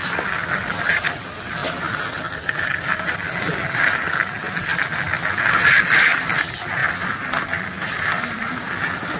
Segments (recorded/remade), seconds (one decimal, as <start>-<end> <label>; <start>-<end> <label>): 0.0-9.2 recorded